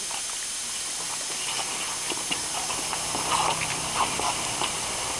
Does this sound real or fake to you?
real